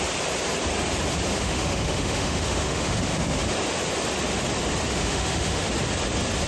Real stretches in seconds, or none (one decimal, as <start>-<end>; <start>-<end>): 0.0-1.3; 3.5-4.9; 5.7-6.5